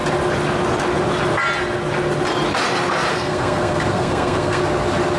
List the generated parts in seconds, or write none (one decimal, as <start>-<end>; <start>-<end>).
3.1-4.6